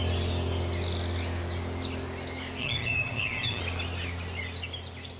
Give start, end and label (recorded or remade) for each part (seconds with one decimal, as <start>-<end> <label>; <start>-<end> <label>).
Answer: 0.0-2.6 recorded; 2.6-3.6 remade; 3.6-5.2 recorded